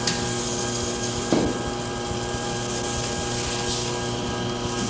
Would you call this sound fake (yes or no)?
no